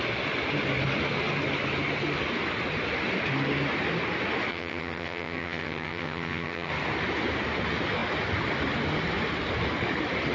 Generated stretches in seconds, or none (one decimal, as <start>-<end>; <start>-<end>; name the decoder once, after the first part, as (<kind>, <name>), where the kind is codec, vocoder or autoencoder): 4.5-6.7 (vocoder, HiFi-GAN)